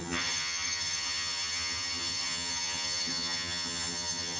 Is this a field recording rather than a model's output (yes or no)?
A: no